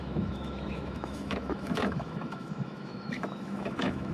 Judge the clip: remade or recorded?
remade